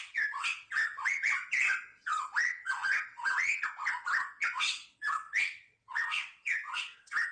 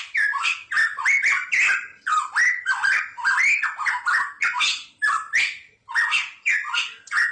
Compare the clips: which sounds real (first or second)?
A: second